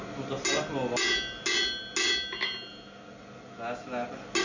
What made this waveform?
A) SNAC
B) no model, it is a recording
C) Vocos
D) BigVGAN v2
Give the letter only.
B